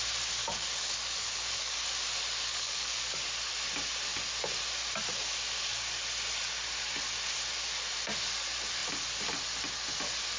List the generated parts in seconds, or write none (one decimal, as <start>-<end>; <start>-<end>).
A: 0.4-1.8; 2.5-3.2